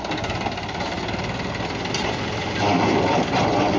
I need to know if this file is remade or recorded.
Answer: recorded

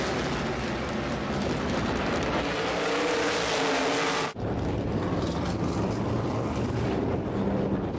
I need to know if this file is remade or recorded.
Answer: recorded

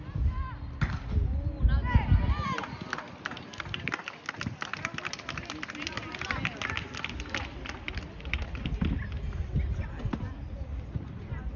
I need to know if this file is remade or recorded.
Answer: recorded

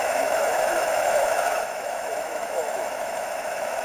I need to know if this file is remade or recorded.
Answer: remade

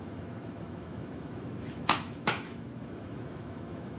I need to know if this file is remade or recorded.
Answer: remade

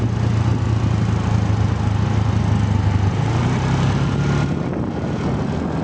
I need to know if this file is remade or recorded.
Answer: recorded